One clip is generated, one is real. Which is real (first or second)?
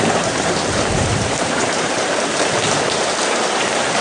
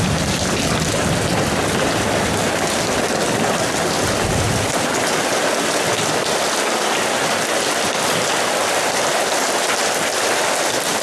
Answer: second